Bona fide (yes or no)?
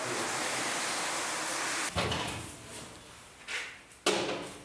yes